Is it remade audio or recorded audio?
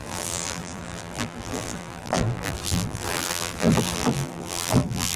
remade